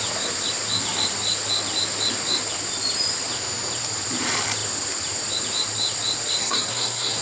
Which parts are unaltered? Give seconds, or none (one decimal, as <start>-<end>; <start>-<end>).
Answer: 0.0-6.4